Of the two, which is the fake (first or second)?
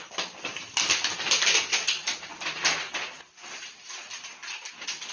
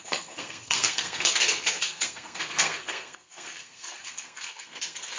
second